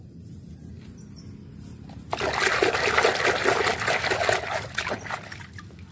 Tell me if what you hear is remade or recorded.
recorded